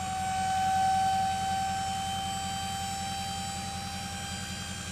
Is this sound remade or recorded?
recorded